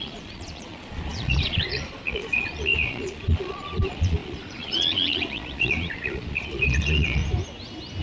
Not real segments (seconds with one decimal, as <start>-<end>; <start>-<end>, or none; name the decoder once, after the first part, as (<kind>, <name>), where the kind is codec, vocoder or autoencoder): 0.0-7.2 (vocoder, Vocos)

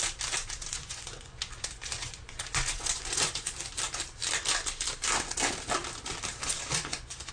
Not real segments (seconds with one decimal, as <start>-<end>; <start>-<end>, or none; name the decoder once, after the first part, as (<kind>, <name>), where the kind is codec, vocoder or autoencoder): 0.7-3.7 (vocoder, Vocos); 6.4-7.3

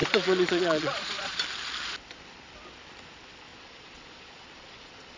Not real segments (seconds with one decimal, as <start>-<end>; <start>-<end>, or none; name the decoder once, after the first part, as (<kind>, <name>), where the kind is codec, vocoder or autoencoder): 0.0-1.4 (vocoder, Vocos); 3.5-5.2

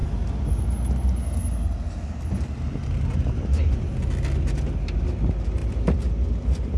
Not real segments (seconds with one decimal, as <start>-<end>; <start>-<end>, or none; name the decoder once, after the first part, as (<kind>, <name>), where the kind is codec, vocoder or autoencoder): none